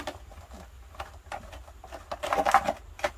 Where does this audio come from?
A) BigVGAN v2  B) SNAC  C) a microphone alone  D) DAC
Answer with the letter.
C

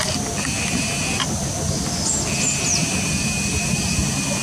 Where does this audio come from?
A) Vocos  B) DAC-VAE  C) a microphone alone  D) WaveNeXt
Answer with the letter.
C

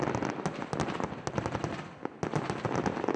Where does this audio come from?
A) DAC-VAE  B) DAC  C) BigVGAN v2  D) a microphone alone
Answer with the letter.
D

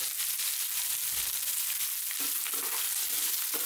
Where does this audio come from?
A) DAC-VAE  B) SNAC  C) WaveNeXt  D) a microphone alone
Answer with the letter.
D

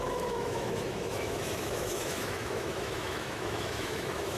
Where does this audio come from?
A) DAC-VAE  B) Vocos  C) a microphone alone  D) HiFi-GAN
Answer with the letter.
A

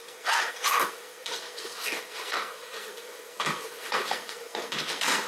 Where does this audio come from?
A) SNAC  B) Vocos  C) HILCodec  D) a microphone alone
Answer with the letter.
A